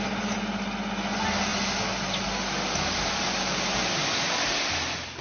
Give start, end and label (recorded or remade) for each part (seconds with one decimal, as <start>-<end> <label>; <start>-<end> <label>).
0.0-1.5 recorded; 1.5-4.4 remade; 4.4-5.2 recorded